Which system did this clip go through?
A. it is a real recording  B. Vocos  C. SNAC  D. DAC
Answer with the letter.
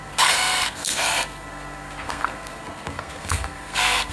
C